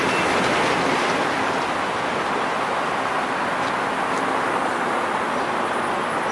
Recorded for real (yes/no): yes